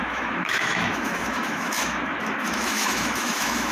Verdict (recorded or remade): remade